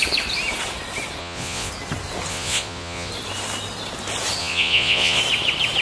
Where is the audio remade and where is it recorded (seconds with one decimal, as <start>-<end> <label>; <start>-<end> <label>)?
0.0-1.2 recorded; 1.2-1.7 remade; 1.7-2.3 recorded; 2.3-3.1 remade; 3.1-4.4 recorded; 4.4-5.2 remade; 5.2-5.8 recorded